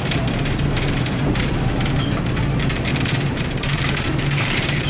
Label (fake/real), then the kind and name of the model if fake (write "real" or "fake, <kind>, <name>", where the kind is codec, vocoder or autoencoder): fake, vocoder, BigVGAN v2